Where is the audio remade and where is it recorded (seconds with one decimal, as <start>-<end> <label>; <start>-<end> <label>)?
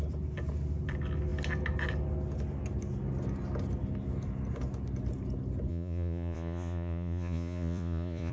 0.0-5.7 recorded; 5.7-8.3 remade